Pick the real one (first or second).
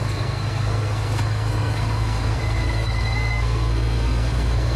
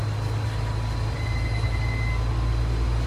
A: second